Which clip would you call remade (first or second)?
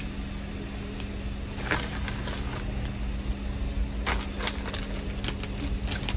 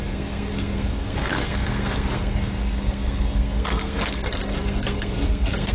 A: second